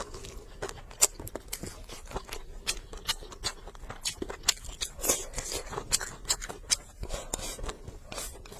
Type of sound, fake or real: real